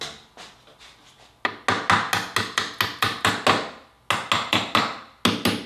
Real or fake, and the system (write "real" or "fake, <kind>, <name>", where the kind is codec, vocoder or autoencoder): real